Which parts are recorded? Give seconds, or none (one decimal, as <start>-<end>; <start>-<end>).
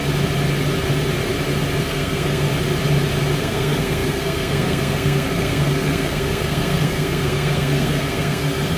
0.0-1.8; 2.5-3.4